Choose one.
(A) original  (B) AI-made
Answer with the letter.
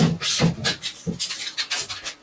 A